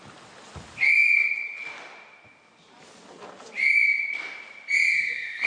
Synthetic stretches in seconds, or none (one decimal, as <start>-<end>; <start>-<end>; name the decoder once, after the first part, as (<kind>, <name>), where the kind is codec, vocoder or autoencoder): none